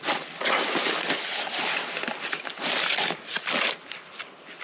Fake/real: real